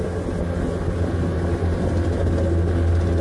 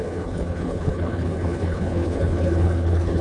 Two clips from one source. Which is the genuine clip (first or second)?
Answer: first